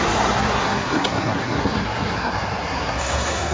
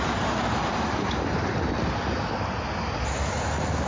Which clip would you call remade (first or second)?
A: first